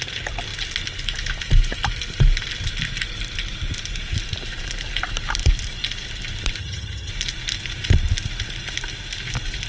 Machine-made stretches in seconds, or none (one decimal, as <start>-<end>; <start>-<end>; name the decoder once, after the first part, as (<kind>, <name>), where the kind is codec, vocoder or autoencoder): 6.6-7.1 (vocoder, HiFi-GAN)